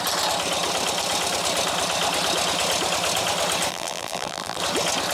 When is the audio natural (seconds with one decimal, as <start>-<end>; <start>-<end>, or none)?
0.0-3.7; 4.6-5.1